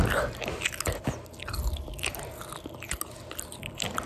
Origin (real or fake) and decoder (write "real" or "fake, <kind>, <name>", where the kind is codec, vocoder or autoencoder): real